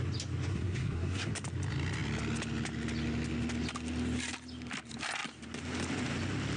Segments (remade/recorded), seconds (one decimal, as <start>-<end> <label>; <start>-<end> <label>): 0.0-0.5 recorded; 0.5-1.3 remade; 1.3-6.6 recorded